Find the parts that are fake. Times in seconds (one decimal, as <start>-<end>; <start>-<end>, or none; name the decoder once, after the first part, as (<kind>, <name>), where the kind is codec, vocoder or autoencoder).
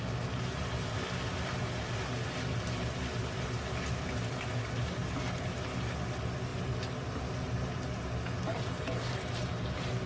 none